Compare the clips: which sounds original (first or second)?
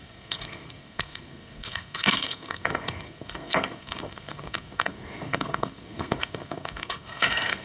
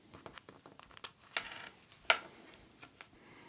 second